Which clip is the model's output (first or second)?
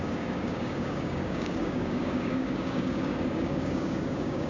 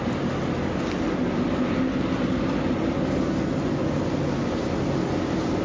first